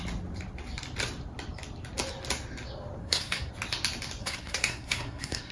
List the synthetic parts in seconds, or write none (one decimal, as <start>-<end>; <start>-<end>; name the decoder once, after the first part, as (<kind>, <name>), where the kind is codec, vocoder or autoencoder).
3.0-3.5 (codec, SNAC); 4.2-5.5